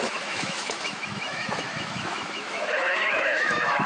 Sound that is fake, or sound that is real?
fake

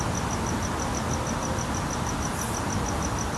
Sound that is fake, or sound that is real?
real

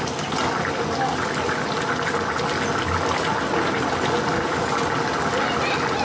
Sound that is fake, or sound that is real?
real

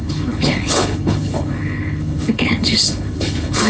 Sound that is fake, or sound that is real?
fake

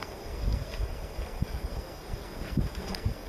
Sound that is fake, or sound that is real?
fake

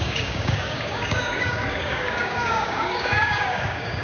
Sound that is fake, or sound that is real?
fake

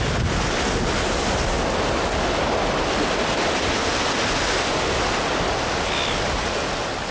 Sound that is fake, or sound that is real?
real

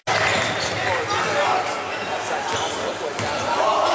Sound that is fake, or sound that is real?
real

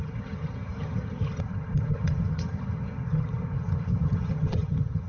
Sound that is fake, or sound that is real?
fake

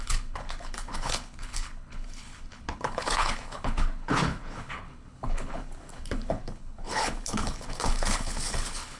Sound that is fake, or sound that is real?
fake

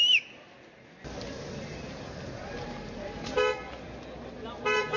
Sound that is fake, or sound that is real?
real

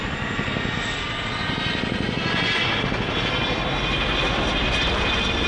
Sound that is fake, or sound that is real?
real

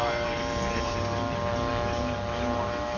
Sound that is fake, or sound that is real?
real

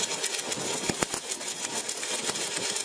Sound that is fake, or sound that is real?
real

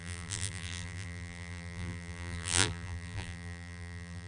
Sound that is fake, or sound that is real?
fake